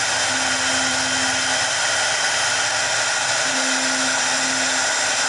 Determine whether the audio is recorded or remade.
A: recorded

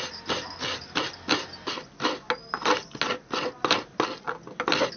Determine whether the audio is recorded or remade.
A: recorded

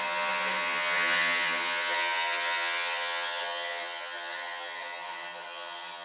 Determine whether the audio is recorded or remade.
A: remade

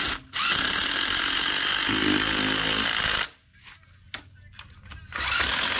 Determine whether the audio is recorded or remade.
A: recorded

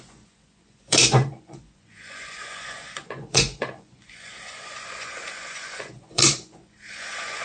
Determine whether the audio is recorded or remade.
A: remade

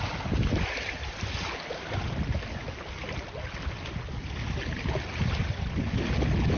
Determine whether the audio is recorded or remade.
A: recorded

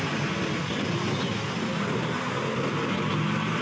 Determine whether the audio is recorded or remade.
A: recorded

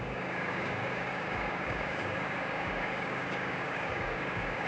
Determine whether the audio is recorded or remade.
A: remade